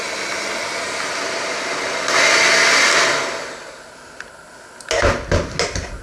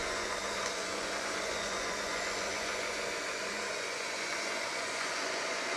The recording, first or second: first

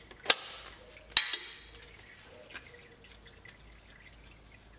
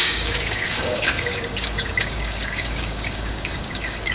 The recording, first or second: first